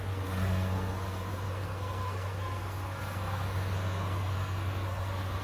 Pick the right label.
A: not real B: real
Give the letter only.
A